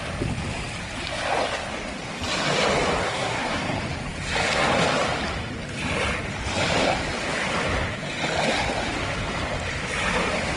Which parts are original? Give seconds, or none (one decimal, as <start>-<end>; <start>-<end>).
0.0-3.0; 3.6-10.6